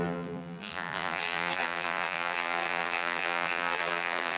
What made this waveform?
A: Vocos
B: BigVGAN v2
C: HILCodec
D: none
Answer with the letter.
B